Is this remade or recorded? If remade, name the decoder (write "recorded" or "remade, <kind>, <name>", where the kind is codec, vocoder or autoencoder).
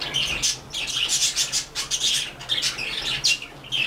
recorded